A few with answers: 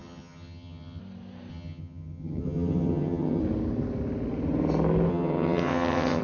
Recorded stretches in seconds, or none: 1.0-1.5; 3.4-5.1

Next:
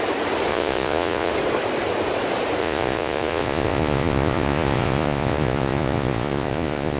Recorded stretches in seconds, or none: 0.0-0.5; 1.3-2.6

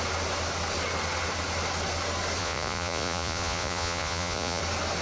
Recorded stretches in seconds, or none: 0.0-2.4; 4.6-5.0

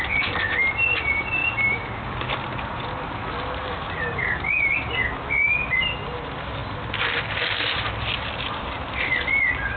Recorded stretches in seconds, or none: 0.0-9.8